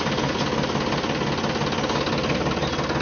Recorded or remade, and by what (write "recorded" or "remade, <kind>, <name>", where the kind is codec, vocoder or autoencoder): recorded